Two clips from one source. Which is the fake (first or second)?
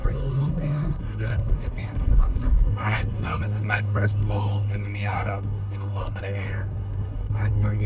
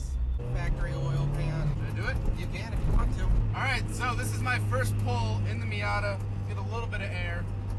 first